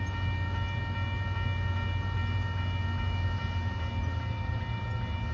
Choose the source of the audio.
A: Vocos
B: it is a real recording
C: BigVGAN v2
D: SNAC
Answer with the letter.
B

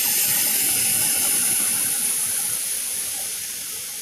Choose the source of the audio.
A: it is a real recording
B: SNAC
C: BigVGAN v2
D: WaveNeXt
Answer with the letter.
C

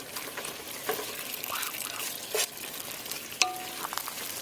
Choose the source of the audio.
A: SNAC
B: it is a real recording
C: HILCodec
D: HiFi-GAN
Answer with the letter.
B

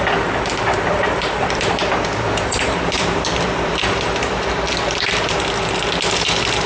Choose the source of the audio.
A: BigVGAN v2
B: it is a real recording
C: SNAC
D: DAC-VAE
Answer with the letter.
A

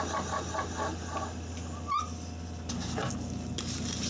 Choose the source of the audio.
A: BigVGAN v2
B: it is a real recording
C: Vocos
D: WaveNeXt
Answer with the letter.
B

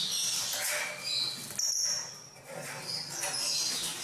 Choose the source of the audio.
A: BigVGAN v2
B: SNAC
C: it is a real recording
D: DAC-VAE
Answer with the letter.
C